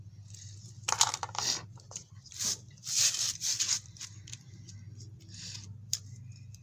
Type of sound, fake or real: fake